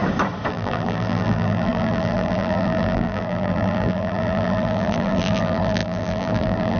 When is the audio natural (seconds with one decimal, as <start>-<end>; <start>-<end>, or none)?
0.0-0.5